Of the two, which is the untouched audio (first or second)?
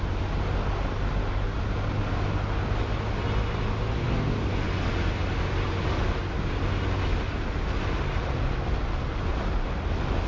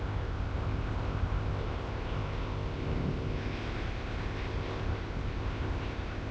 first